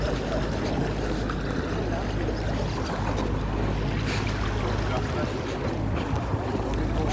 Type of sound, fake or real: real